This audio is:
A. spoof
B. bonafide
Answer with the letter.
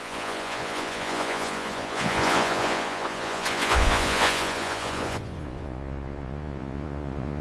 A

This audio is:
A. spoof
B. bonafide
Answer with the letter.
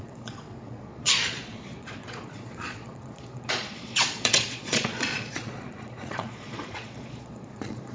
A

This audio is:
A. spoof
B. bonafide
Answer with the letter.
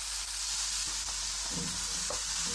B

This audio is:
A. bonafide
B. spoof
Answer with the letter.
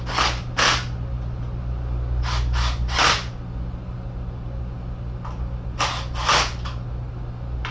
A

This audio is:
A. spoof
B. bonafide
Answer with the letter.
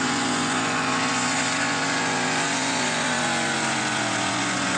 A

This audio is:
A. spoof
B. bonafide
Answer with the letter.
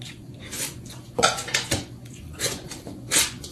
A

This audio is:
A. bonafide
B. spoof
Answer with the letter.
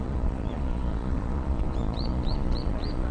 B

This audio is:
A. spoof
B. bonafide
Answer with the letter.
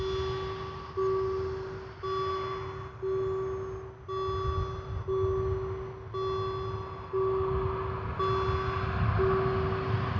B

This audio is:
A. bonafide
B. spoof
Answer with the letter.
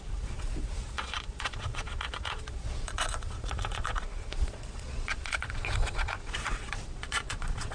B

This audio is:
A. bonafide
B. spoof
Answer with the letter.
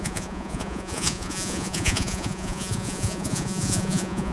B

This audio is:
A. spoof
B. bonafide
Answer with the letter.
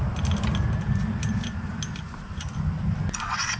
B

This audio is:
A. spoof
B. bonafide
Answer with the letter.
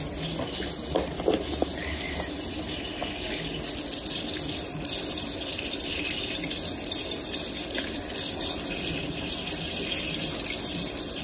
B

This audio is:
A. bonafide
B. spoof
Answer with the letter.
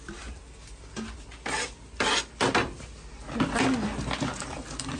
A